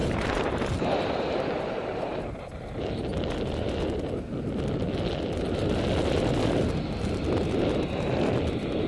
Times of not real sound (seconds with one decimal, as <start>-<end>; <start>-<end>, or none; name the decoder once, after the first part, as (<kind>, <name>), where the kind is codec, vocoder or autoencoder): 0.0-2.4 (vocoder, BigVGAN v2)